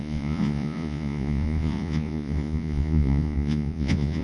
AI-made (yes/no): yes